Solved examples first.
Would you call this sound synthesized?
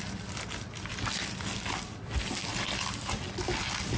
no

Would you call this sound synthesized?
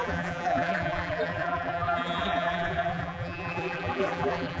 yes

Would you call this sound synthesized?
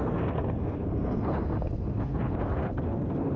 yes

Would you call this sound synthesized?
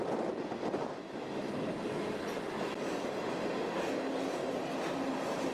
no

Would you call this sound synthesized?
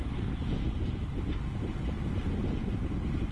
no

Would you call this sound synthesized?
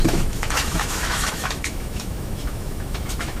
yes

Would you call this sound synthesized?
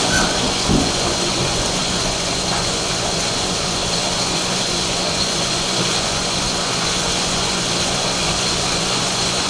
yes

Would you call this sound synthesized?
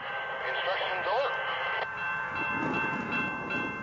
no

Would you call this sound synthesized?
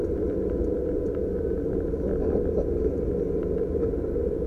no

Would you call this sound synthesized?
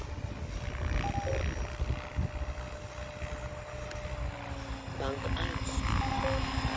no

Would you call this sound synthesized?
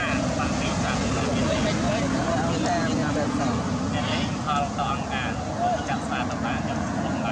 no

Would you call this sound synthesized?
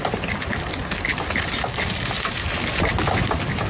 no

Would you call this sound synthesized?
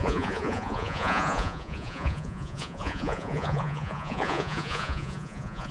yes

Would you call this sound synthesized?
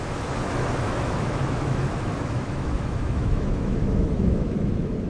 yes